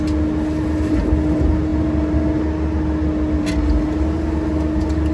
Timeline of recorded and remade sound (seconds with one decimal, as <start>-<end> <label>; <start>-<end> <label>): 0.0-5.1 recorded